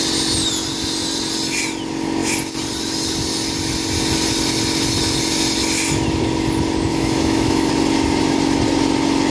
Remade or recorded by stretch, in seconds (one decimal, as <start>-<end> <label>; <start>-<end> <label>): 0.0-6.9 recorded; 6.9-7.7 remade; 7.7-9.3 recorded